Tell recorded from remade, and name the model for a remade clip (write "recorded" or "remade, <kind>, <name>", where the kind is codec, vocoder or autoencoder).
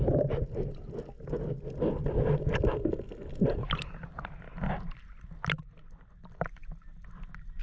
recorded